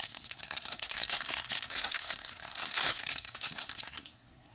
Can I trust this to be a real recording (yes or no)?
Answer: no